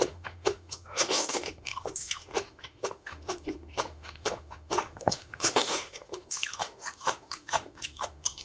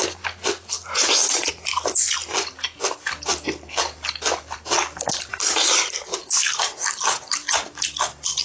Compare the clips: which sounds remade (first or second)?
first